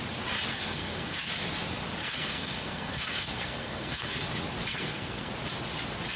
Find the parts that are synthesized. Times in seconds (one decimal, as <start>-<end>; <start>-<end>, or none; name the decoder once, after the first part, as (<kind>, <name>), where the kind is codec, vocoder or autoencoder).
0.5-1.3 (codec, SNAC); 2.0-4.2; 4.7-5.3